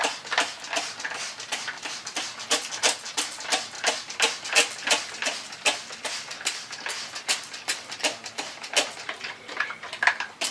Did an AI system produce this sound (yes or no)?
no